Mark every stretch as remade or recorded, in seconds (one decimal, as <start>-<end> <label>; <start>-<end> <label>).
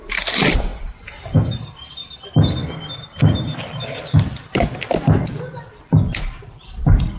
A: 0.0-7.2 recorded